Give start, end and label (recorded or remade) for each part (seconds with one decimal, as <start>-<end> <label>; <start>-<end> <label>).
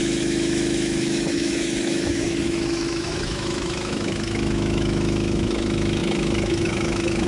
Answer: 0.0-7.3 remade